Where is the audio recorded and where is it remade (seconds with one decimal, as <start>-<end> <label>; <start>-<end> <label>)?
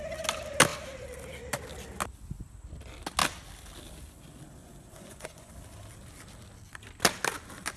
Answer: 0.0-4.6 recorded; 4.6-5.5 remade; 5.5-7.8 recorded